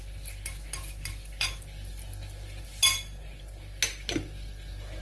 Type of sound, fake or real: real